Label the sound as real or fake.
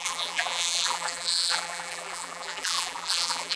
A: fake